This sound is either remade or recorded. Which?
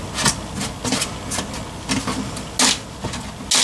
recorded